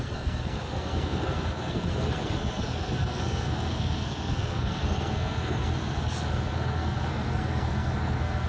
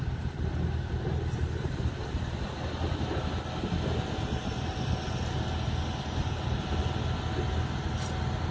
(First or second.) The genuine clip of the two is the second